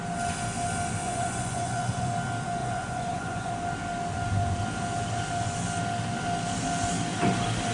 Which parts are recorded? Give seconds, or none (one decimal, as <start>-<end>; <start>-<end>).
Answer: 0.0-1.0; 2.1-2.6; 3.5-7.7

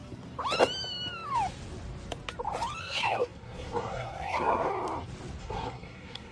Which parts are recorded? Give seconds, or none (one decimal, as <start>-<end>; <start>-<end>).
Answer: 0.0-2.8; 4.7-5.4

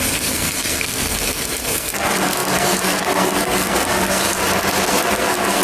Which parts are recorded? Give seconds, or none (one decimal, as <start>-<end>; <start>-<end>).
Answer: 4.4-4.9

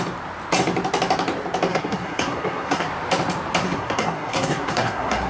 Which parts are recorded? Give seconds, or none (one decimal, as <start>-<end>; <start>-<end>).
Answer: 0.0-1.7; 2.9-3.6

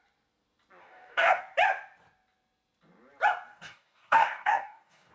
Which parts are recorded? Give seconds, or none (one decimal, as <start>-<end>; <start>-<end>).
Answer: 0.0-0.8; 1.4-3.5

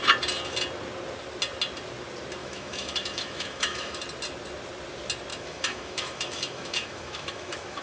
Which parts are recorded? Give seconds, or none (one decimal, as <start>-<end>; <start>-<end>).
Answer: 0.0-2.4; 4.0-5.3

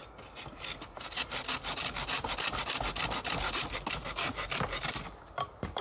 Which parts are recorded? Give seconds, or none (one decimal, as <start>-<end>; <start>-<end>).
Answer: 0.0-5.8